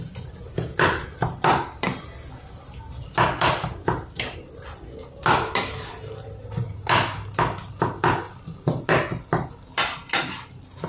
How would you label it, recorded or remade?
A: recorded